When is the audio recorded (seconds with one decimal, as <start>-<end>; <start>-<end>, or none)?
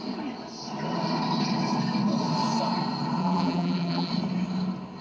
0.0-3.2; 4.1-5.0